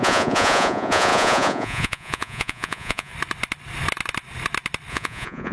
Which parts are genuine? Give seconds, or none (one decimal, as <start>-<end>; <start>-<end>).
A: 3.1-4.9